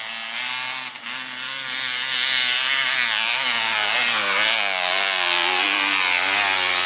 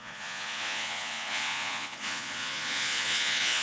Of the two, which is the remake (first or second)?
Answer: second